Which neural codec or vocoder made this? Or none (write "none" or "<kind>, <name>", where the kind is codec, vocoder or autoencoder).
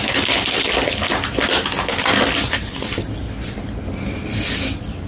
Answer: none